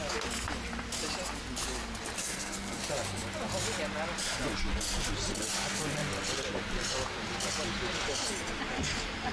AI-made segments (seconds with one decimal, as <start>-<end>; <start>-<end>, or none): 2.2-2.8